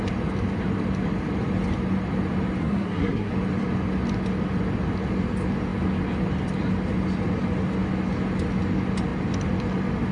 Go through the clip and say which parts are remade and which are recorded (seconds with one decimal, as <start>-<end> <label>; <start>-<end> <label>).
0.0-2.6 recorded; 2.6-3.3 remade; 3.3-10.1 recorded